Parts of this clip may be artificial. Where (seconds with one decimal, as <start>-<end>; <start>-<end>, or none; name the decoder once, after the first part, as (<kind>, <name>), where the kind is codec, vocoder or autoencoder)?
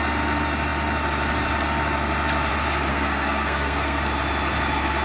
2.9-4.0 (codec, SNAC)